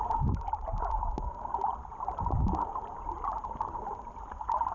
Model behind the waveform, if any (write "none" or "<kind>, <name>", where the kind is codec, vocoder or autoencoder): none